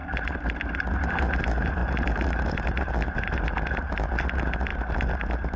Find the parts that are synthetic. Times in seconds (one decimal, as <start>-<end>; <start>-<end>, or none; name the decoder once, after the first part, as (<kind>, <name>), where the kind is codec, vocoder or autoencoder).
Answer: 1.8-2.8 (vocoder, BigVGAN v2)